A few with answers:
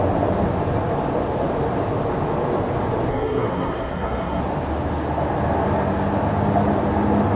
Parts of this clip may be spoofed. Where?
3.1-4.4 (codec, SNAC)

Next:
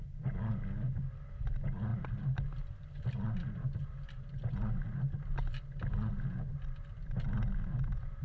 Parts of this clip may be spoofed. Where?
none

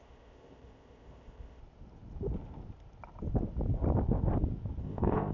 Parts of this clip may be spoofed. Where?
0.0-1.6 (codec, ZipCodec); 4.8-5.3

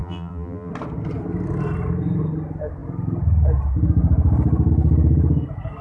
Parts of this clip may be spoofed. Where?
0.0-0.7 (vocoder, BigVGAN v2)